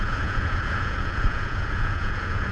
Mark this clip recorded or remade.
remade